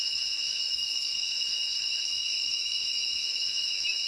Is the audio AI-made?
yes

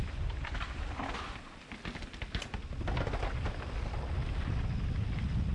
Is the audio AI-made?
no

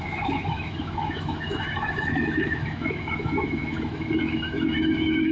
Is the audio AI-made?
yes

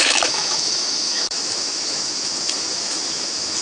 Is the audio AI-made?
yes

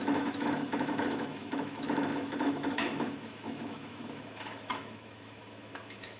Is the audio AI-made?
yes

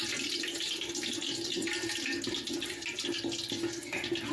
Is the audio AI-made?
no